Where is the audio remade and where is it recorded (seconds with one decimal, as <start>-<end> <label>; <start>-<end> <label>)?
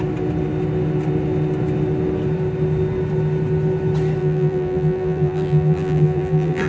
0.0-4.2 recorded; 4.2-6.7 remade